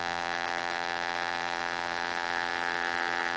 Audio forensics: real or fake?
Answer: fake